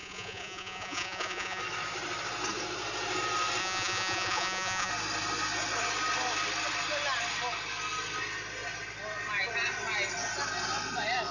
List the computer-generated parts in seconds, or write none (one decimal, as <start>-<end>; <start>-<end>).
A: 0.0-1.6; 3.6-4.9